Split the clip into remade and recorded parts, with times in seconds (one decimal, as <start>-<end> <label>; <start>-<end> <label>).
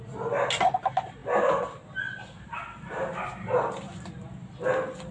0.0-5.1 recorded